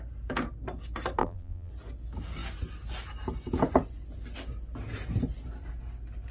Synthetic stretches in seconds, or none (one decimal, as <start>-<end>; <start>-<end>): 1.2-1.7